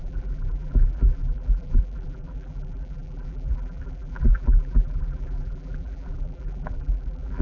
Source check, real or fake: fake